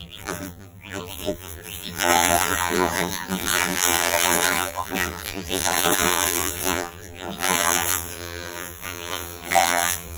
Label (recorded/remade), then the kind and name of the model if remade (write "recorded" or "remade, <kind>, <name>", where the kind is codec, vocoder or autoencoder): remade, vocoder, BigVGAN v2